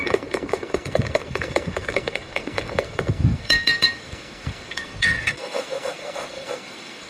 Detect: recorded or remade remade